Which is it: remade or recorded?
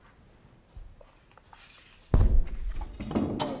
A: recorded